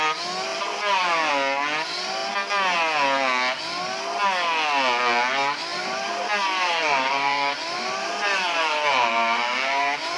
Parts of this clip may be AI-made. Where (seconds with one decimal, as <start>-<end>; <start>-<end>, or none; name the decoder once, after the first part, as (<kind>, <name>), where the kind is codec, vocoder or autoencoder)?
0.5-1.3 (vocoder, BigVGAN v2); 5.7-10.2